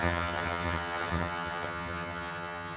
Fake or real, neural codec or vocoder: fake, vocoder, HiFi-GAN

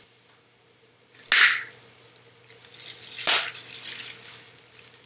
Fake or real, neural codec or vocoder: real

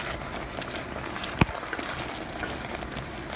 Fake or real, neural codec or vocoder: real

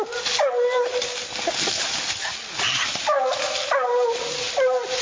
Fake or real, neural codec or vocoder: real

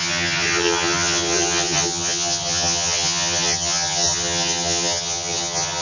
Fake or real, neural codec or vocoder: fake, vocoder, HiFi-GAN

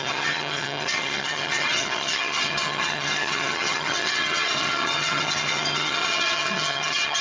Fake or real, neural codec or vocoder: fake, vocoder, HiFi-GAN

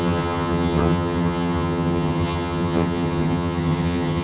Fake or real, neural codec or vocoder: fake, vocoder, HiFi-GAN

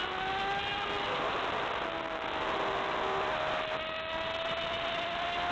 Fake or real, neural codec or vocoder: real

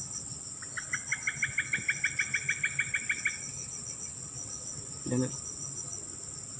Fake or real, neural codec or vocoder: real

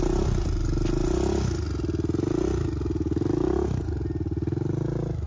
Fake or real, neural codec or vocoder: real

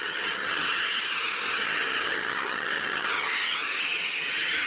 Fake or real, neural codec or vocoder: fake, vocoder, HiFi-GAN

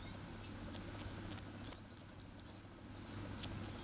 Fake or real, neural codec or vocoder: real